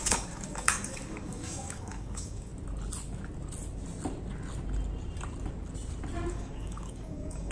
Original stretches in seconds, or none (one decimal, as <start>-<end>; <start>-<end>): 2.5-6.3